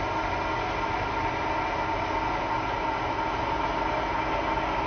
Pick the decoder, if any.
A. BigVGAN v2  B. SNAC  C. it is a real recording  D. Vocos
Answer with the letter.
C